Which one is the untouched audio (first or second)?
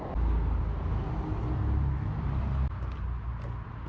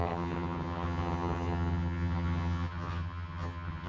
first